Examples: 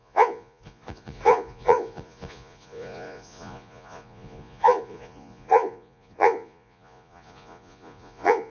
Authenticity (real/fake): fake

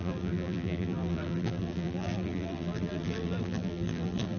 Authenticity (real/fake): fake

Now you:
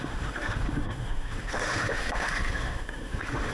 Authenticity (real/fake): fake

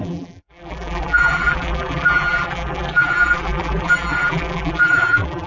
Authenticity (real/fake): fake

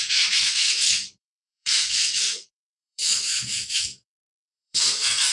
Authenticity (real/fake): fake